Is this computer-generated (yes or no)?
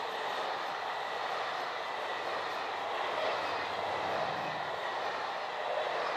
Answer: no